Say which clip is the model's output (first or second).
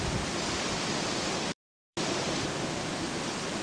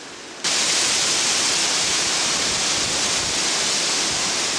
first